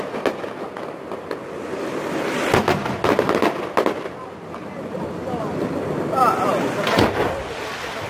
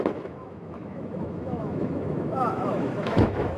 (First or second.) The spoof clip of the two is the second